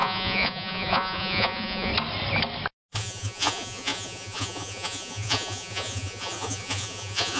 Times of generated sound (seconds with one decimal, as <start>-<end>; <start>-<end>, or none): 0.0-1.9; 2.9-7.4